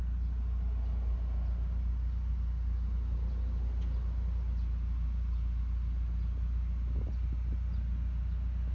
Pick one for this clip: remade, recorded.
recorded